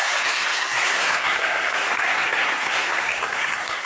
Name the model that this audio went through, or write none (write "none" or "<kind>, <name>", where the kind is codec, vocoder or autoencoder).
codec, SNAC